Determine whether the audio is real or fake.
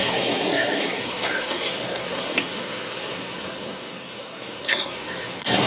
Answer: fake